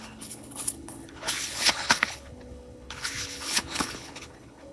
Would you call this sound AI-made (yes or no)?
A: yes